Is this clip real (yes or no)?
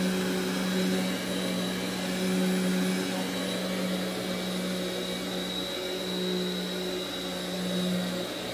yes